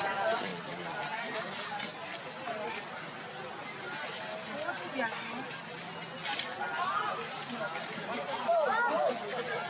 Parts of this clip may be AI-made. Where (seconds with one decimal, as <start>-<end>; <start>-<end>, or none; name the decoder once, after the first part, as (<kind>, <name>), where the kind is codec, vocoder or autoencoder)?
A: none